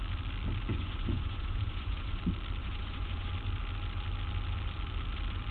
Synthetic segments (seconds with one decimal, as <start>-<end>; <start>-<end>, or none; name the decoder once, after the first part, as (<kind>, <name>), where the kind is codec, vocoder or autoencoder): 0.7-2.2 (vocoder, Vocos); 2.6-3.3